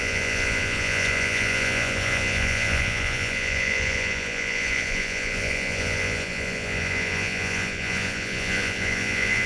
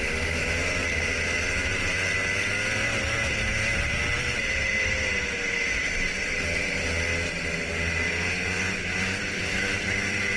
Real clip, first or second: second